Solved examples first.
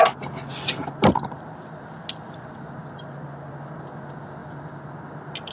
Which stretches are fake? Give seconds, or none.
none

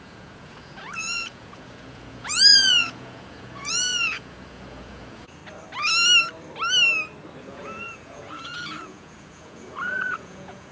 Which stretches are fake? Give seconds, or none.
0.0-5.4; 7.4-10.7

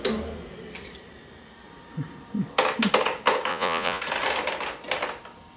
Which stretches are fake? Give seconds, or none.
3.5-4.0

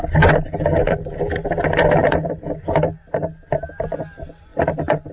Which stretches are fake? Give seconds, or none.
none

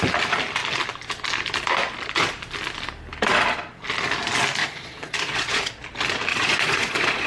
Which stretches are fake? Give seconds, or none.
4.6-5.7; 6.3-7.3

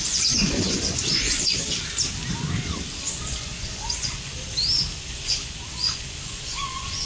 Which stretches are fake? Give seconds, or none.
0.0-1.5; 3.0-4.3; 5.1-7.1